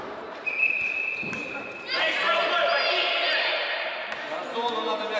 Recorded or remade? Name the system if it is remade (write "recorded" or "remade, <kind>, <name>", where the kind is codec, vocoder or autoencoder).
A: remade, vocoder, BigVGAN v2